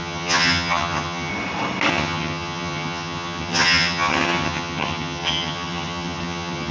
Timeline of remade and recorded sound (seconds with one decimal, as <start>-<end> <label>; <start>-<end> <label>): 0.0-1.3 remade; 1.3-1.9 recorded; 1.9-6.7 remade